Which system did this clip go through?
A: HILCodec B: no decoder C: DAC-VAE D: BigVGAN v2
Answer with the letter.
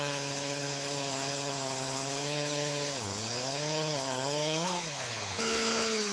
A